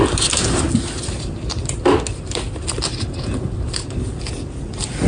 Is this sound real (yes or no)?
yes